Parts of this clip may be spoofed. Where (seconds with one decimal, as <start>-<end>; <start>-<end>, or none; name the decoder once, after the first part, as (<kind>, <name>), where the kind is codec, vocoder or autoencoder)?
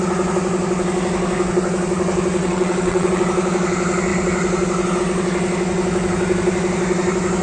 2.4-3.2 (vocoder, WaveNeXt)